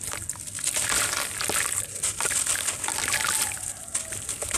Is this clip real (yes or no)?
yes